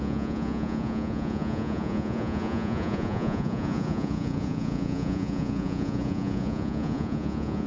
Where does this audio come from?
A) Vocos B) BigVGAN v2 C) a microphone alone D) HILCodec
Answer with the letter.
A